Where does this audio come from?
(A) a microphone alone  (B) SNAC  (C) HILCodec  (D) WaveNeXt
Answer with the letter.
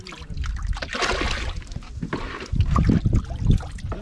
A